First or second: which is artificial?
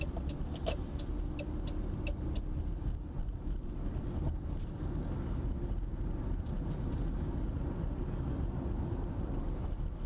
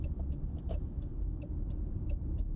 second